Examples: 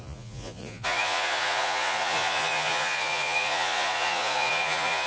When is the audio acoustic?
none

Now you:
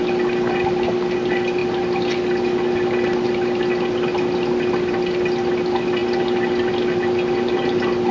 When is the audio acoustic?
0.0-8.1

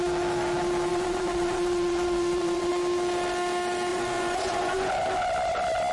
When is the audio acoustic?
0.0-0.9; 2.7-3.9; 4.9-5.9

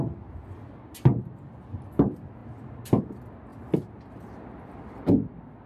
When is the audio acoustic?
0.0-5.7

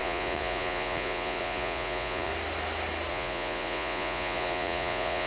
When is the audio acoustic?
2.3-3.1

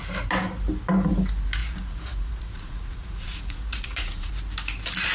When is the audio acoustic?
0.0-1.6; 4.3-5.1